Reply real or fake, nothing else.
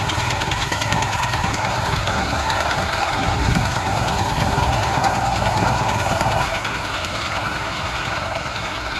fake